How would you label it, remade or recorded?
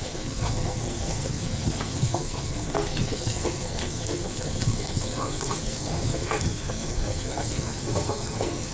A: remade